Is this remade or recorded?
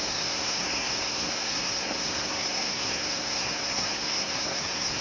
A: remade